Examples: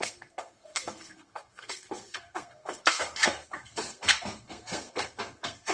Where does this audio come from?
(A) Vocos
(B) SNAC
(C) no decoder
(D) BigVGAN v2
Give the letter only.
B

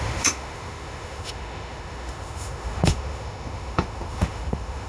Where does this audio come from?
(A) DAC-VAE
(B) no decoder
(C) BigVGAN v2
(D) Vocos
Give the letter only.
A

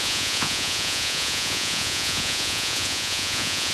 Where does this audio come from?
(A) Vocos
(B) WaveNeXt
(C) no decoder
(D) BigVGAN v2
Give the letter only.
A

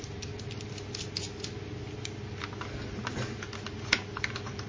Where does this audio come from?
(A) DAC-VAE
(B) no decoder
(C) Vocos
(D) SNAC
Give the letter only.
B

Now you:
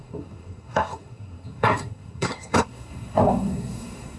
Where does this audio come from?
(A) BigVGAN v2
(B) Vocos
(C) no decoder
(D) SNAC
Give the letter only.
D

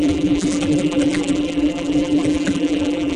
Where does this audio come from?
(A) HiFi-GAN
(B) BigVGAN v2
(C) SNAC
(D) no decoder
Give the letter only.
B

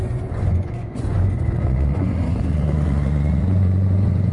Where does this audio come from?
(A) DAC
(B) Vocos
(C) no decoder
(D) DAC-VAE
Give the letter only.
B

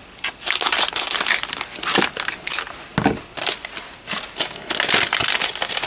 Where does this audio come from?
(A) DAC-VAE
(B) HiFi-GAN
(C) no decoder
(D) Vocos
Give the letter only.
C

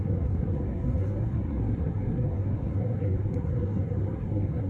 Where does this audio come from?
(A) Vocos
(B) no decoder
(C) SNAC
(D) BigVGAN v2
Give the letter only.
C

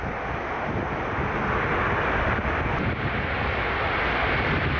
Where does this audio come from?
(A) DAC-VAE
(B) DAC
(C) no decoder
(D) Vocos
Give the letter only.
C